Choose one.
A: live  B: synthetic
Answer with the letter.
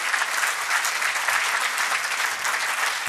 A